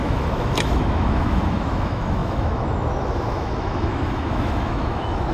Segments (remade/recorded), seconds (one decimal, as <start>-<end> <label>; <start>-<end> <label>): 0.0-5.3 remade